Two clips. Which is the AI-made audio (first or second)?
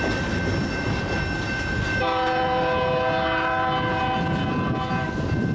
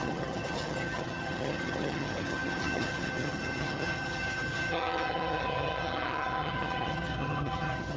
second